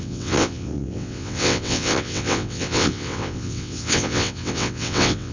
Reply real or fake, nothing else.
fake